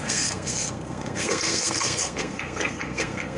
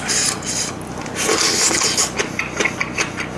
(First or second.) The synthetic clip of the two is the first